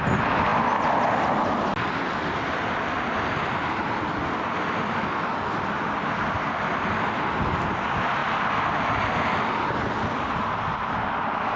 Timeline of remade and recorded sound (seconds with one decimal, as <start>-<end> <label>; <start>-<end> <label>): 0.0-11.6 recorded